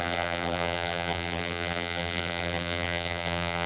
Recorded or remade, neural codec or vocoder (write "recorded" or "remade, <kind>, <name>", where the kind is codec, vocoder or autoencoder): remade, vocoder, BigVGAN v2